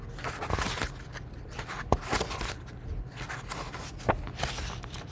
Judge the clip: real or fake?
real